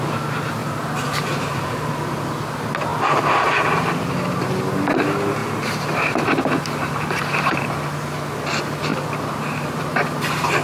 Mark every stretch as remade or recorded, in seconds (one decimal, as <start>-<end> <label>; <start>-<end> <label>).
0.0-0.6 recorded; 0.6-1.9 remade; 1.9-2.9 recorded; 2.9-4.0 remade; 4.0-5.4 recorded; 5.4-7.6 remade; 7.6-10.6 recorded